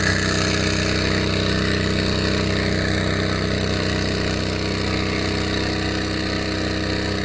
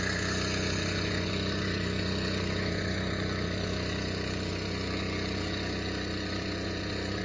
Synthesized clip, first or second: second